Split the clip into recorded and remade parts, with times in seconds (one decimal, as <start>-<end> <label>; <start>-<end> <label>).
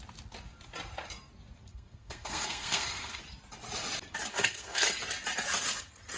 0.0-1.7 recorded; 1.7-3.2 remade; 3.2-4.3 recorded; 4.3-4.9 remade; 4.9-6.2 recorded